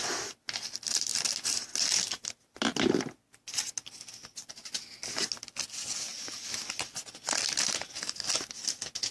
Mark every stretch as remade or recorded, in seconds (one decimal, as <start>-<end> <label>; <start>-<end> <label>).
0.0-9.1 recorded